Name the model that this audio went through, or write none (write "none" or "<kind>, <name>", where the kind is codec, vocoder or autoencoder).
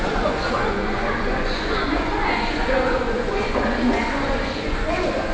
vocoder, Vocos